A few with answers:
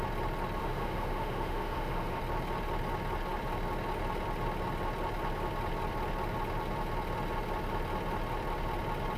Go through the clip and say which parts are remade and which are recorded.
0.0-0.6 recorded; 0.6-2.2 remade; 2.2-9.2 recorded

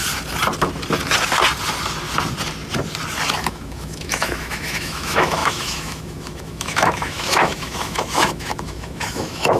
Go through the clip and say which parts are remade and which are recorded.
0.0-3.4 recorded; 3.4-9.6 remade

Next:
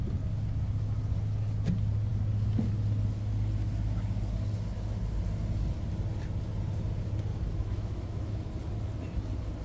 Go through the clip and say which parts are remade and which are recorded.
0.0-7.3 recorded; 7.3-8.5 remade; 8.5-9.6 recorded

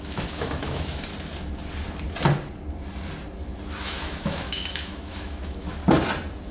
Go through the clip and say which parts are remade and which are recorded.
0.0-1.1 remade; 1.1-3.7 recorded; 3.7-5.8 remade; 5.8-6.5 recorded

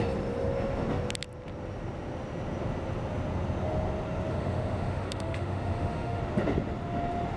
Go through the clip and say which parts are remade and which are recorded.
0.0-4.3 recorded; 4.3-6.2 remade; 6.2-7.4 recorded

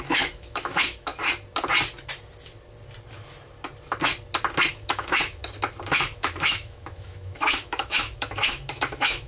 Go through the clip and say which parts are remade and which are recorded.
0.0-1.1 remade; 1.1-4.7 recorded; 4.7-5.4 remade; 5.4-5.9 recorded; 5.9-9.3 remade